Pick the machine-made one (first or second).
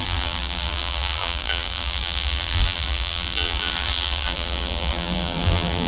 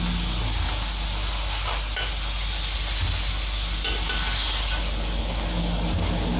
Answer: first